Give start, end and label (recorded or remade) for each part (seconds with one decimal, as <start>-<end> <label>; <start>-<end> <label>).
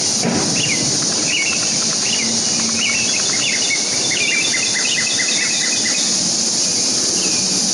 0.0-7.7 recorded